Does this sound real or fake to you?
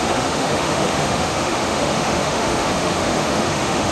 fake